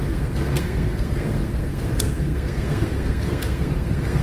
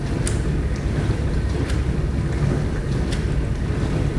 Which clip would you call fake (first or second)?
first